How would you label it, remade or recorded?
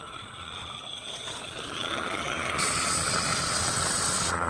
remade